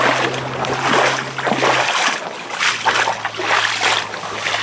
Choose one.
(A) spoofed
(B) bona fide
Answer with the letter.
B